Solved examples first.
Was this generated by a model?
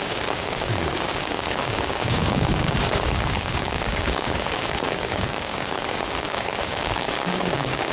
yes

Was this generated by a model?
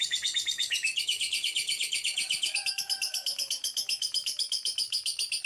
yes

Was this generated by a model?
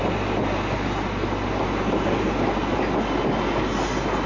no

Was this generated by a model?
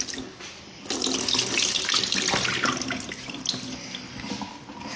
no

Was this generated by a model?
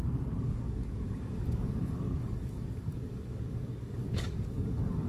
yes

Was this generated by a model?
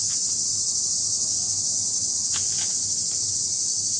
no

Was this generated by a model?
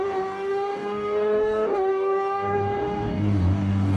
yes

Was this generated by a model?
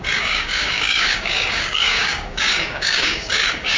yes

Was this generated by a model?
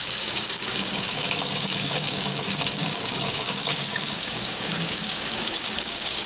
yes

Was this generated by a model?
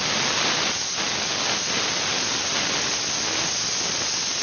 no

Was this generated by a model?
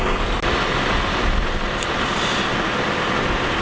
no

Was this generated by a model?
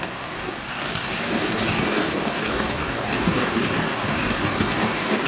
yes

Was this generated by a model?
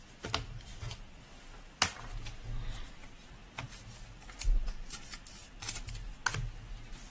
no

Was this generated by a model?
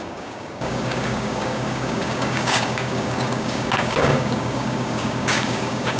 yes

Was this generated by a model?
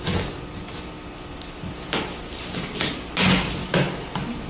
no